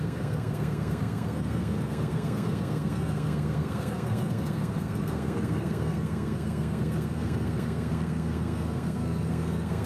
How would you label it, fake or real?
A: fake